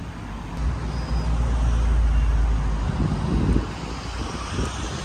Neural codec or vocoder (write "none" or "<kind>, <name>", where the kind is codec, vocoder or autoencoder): none